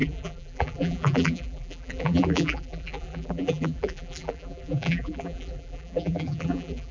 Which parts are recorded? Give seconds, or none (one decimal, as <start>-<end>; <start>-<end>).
none

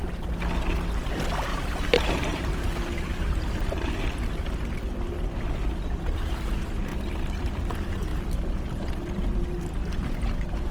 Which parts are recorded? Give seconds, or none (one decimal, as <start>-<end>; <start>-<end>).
0.0-1.5; 3.9-9.8

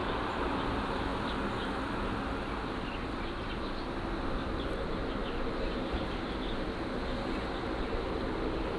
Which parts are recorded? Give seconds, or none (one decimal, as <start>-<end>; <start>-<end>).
0.6-8.8

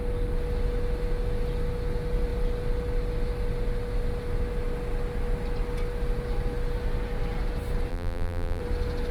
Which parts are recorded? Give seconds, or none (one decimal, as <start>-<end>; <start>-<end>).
0.0-7.9; 8.6-9.1